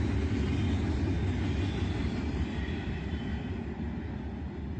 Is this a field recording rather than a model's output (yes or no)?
yes